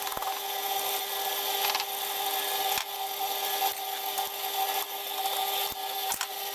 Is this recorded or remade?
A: recorded